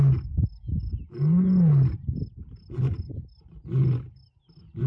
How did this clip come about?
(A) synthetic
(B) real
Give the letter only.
B